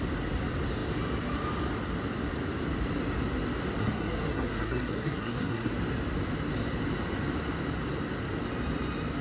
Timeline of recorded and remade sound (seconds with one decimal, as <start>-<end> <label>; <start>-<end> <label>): 0.0-3.8 recorded; 3.8-5.7 remade; 5.7-9.2 recorded